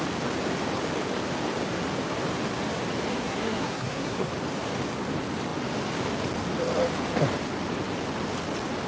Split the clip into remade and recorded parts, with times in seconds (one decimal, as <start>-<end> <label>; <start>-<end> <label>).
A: 0.0-3.1 recorded; 3.1-4.3 remade; 4.3-8.9 recorded